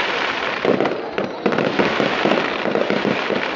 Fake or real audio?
fake